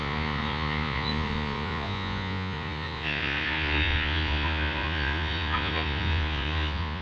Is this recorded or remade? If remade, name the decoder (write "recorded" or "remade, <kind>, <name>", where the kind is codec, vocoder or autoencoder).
remade, vocoder, Vocos